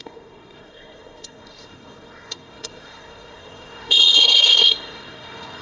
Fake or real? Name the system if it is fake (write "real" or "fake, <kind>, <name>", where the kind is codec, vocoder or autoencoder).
fake, codec, SNAC